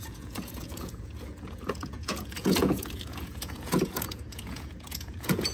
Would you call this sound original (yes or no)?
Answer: no